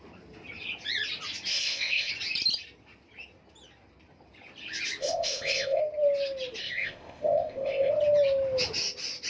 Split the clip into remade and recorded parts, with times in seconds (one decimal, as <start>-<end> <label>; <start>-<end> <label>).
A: 0.0-1.5 recorded; 1.5-2.1 remade; 2.1-5.0 recorded; 5.0-5.8 remade; 5.8-6.6 recorded; 6.6-7.9 remade; 7.9-9.3 recorded